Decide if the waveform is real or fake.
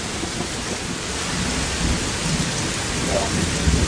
real